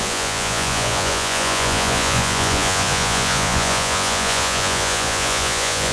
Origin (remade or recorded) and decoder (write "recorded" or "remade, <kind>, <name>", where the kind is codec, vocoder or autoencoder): remade, vocoder, Vocos